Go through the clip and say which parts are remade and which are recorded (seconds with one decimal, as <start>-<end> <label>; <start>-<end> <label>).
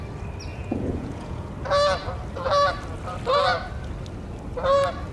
0.0-0.5 recorded; 0.5-1.5 remade; 1.5-5.1 recorded